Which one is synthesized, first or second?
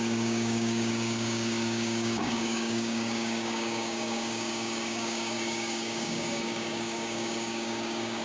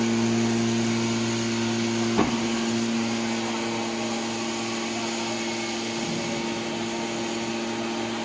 first